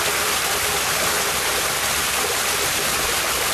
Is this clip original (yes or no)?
yes